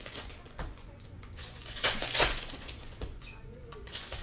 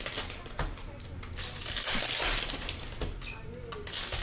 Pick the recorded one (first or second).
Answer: second